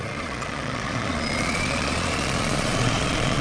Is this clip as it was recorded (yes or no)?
no